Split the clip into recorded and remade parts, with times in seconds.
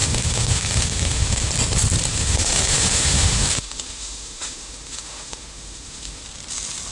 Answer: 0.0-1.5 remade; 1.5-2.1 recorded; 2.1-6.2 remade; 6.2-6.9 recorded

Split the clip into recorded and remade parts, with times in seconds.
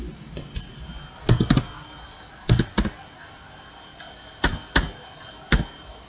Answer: 0.0-6.1 recorded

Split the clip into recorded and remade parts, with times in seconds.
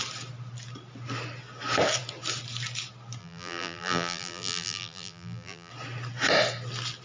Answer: 0.0-3.2 recorded; 3.2-5.7 remade; 5.7-7.0 recorded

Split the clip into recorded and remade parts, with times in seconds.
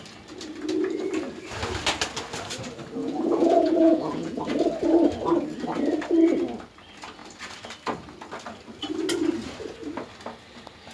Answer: 0.0-3.0 recorded; 3.0-4.4 remade; 4.4-10.9 recorded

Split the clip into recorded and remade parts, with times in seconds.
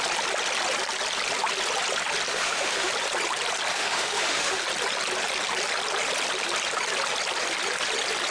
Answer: 0.0-2.3 recorded; 2.3-2.9 remade; 2.9-3.7 recorded; 3.7-4.6 remade; 4.6-8.3 recorded